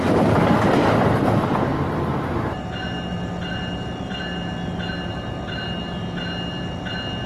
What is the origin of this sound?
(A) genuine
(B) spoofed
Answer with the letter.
A